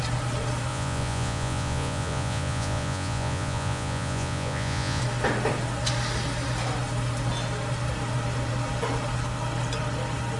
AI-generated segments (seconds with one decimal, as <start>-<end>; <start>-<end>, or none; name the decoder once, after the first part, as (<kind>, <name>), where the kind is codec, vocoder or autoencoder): 0.7-5.0 (vocoder, Vocos)